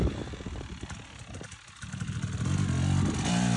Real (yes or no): yes